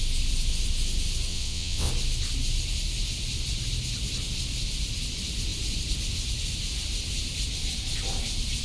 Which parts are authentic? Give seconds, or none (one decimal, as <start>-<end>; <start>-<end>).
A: 0.0-1.3; 1.9-8.6